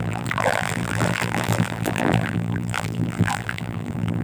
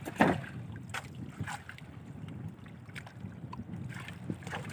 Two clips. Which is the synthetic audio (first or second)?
first